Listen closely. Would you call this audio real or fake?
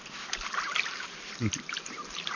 fake